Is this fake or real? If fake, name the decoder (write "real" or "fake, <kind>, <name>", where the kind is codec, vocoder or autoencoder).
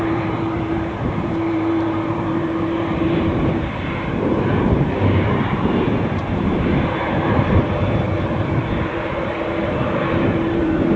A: fake, vocoder, BigVGAN v2